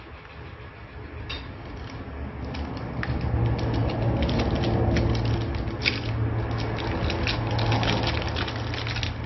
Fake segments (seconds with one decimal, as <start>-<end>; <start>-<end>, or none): none

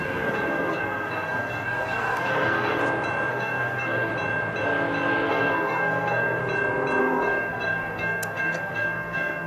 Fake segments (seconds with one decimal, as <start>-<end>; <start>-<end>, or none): 0.0-2.8; 3.3-4.1; 5.3-6.4; 7.0-9.5

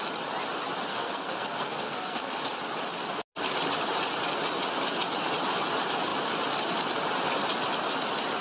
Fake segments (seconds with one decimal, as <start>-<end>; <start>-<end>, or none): 0.9-2.3

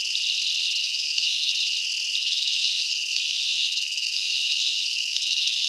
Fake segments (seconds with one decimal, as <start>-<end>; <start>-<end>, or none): 0.8-1.5; 2.2-5.7

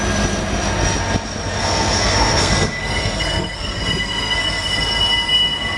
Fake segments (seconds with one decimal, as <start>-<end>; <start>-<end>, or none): 1.6-4.7